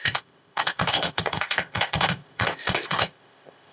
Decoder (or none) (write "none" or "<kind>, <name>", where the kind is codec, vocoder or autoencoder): codec, ZipCodec